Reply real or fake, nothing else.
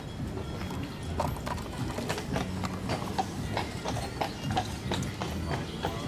real